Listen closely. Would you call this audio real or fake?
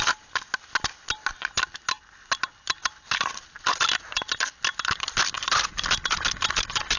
real